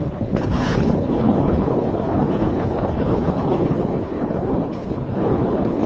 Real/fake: fake